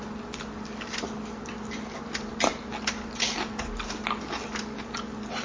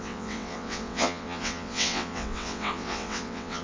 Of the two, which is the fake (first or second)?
second